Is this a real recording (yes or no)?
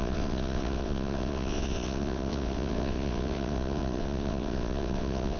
no